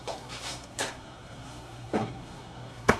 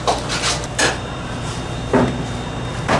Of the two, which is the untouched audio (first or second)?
second